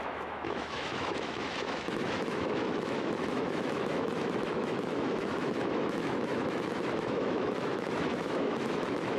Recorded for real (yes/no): no